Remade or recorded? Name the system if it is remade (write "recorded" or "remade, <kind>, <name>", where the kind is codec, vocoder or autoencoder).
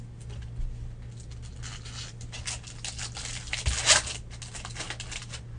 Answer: recorded